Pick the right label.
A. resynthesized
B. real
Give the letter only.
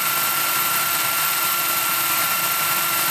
A